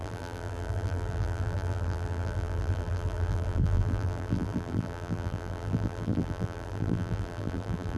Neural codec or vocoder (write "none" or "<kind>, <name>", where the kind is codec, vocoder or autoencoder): vocoder, BigVGAN v2